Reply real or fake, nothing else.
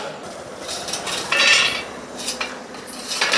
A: real